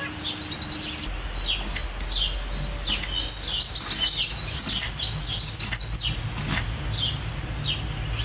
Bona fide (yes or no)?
yes